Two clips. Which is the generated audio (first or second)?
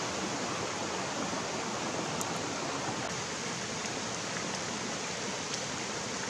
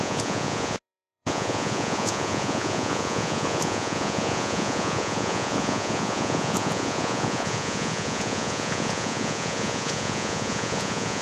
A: second